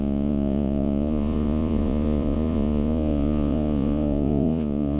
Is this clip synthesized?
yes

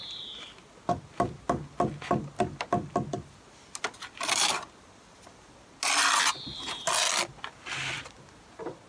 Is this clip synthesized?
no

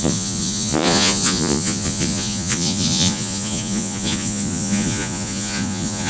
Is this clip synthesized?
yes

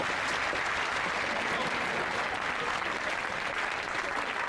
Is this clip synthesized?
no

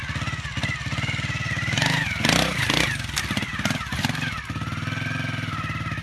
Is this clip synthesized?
no